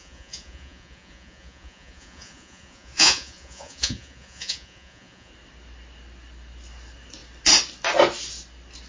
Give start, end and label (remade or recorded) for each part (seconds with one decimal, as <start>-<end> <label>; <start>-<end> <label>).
0.0-5.3 remade; 5.3-8.9 recorded